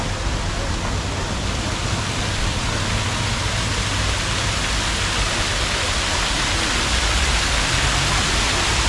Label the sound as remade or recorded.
recorded